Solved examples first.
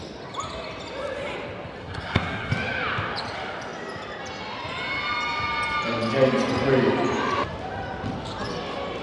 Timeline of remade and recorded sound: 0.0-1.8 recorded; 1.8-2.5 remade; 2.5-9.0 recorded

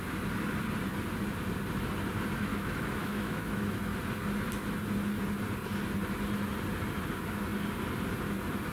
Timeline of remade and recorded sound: 0.0-2.5 recorded; 2.5-3.8 remade; 3.8-8.7 recorded